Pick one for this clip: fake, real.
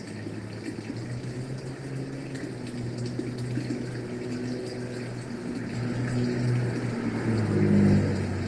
real